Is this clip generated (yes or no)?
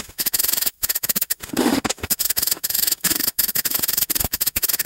yes